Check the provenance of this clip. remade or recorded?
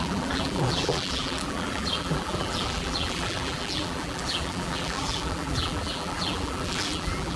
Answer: remade